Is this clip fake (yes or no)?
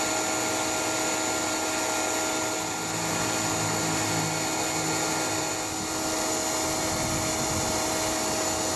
no